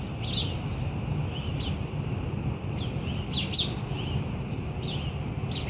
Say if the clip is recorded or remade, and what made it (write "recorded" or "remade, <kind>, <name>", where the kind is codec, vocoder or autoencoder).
recorded